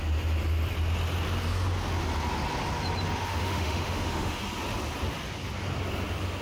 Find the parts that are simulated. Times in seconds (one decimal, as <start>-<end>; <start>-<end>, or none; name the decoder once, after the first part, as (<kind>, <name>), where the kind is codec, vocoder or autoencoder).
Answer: 3.3-4.4 (autoencoder, DAC-VAE)